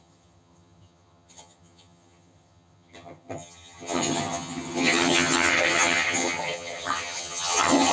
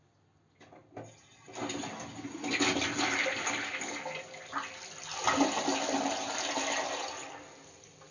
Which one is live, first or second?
second